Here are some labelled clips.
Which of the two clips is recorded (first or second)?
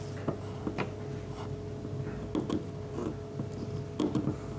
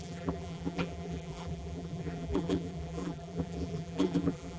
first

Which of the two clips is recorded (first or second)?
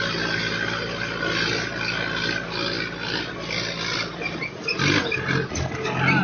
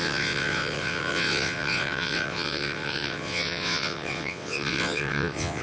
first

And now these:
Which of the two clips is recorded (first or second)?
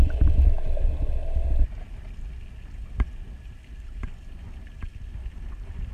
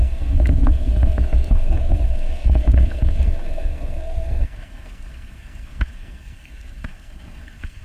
first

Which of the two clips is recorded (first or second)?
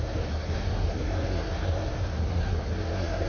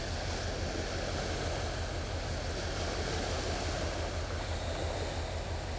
second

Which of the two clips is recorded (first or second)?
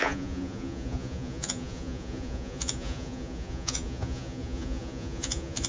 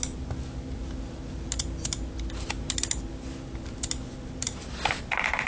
second